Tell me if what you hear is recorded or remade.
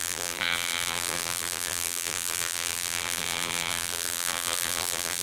remade